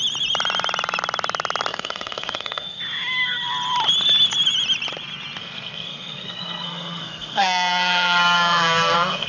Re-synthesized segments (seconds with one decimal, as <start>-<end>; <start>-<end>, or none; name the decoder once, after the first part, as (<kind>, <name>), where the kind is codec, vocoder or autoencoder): 1.7-2.8 (codec, SNAC); 5.4-9.3